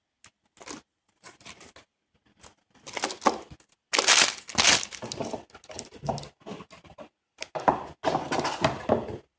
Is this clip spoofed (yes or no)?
no